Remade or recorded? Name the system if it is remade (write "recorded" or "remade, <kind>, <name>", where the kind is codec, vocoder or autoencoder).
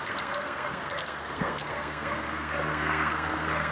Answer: remade, codec, SNAC